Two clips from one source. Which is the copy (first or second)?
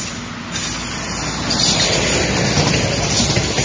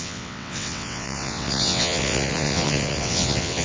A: second